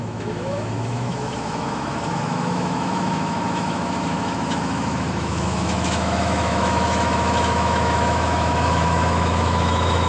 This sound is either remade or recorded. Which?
remade